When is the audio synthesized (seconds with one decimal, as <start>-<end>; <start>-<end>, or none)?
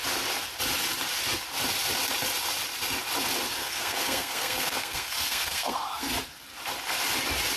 3.6-6.1